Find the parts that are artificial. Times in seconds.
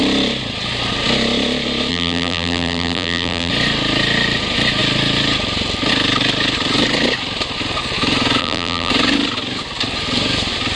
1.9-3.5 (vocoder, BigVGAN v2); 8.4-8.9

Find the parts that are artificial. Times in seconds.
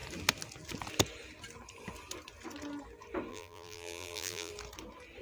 3.3-4.5 (vocoder, BigVGAN v2)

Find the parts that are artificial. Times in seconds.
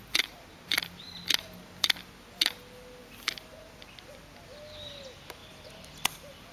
5.4-6.5 (vocoder, BigVGAN v2)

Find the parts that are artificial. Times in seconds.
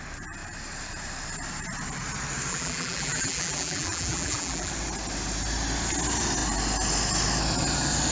2.5-4.7 (vocoder, BigVGAN v2)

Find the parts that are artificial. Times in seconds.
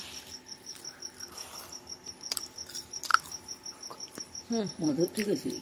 0.0-3.1 (vocoder, BigVGAN v2); 4.6-5.6